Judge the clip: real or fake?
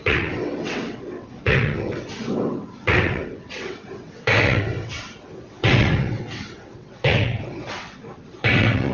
fake